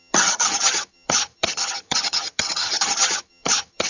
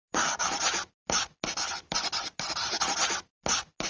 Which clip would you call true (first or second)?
second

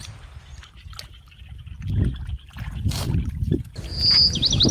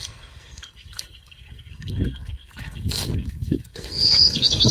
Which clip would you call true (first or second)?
first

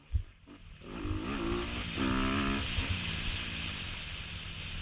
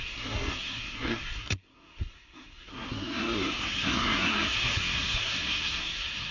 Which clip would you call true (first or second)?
first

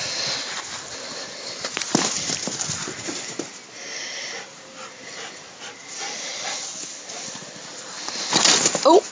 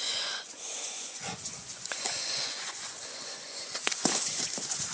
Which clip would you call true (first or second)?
first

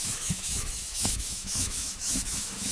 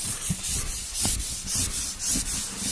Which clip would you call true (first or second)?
second